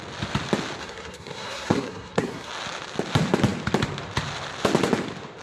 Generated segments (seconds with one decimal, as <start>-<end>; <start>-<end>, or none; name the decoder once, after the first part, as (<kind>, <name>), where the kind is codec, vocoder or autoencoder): 0.8-2.5 (codec, SNAC)